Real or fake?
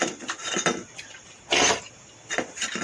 fake